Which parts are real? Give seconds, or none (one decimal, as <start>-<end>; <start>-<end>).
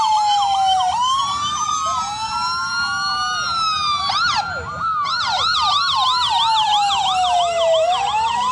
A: 0.0-8.5